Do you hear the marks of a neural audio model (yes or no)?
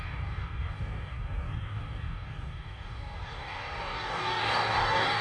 yes